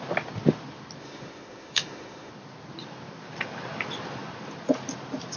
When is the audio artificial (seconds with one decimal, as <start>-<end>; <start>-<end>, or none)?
1.0-2.3